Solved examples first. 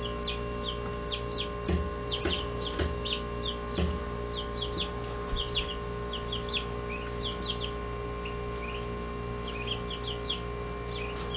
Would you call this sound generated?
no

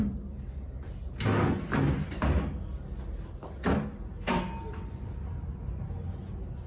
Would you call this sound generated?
no